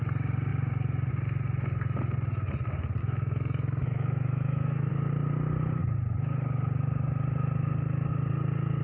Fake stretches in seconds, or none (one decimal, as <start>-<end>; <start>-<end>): 3.0-4.9